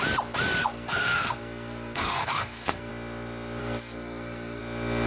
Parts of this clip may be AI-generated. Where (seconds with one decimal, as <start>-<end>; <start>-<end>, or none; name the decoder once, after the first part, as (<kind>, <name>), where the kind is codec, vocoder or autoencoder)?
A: 0.6-2.9 (codec, SNAC); 3.6-4.6